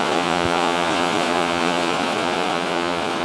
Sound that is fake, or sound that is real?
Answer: fake